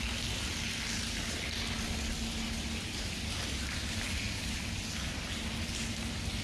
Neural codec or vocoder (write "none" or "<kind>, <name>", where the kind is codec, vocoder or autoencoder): none